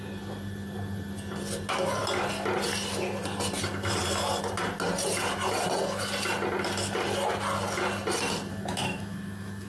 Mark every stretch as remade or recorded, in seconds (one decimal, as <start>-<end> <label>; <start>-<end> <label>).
0.0-8.5 recorded; 8.5-9.7 remade

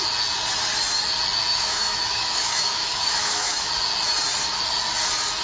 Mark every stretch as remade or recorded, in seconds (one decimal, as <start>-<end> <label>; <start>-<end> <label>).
0.0-1.5 recorded; 1.5-3.7 remade; 3.7-5.4 recorded

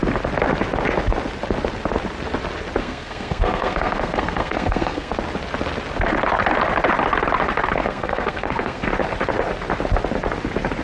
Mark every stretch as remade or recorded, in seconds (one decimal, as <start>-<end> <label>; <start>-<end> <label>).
0.0-2.8 recorded; 2.8-5.1 remade; 5.1-7.8 recorded; 7.8-8.9 remade; 8.9-10.8 recorded

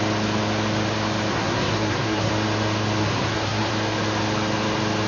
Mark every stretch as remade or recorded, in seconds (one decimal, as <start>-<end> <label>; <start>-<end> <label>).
0.0-1.3 recorded; 1.3-2.3 remade; 2.3-3.0 recorded; 3.0-3.7 remade; 3.7-5.1 recorded

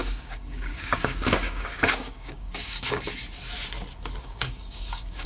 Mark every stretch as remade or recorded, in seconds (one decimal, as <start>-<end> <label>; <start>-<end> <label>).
0.0-3.1 remade; 3.1-4.2 recorded; 4.2-5.3 remade

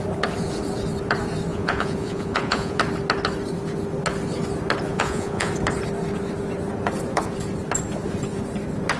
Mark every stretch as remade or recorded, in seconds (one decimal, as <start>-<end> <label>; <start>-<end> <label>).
0.0-1.5 recorded; 1.5-2.8 remade; 2.8-4.9 recorded; 4.9-5.5 remade; 5.5-9.0 recorded

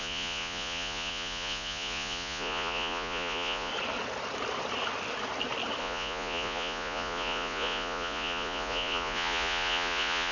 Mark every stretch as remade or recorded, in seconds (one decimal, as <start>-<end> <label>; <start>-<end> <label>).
0.0-3.7 remade; 3.7-5.8 recorded; 5.8-10.3 remade

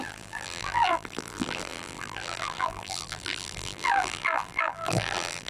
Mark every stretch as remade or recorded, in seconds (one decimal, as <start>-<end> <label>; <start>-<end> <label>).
0.0-5.5 remade